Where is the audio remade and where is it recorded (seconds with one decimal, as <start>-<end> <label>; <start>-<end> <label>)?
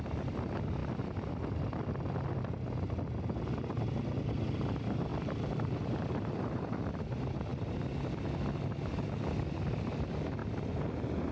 0.0-5.1 recorded; 5.1-6.8 remade; 6.8-10.4 recorded; 10.4-11.3 remade